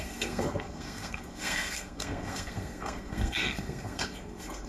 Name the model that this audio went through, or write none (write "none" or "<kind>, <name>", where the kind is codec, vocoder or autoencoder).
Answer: codec, SNAC